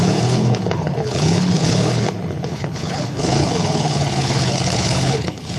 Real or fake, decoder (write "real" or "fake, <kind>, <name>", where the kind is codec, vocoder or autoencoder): fake, codec, HILCodec